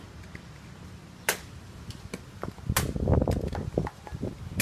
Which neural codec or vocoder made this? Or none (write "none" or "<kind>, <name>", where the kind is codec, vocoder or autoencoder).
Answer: none